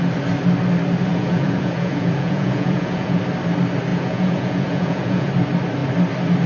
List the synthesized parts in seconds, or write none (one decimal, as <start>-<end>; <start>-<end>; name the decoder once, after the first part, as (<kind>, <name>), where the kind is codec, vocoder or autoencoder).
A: 1.1-3.2 (vocoder, Vocos); 3.9-5.3